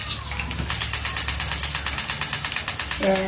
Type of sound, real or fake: real